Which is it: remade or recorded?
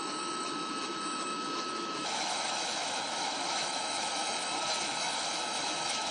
remade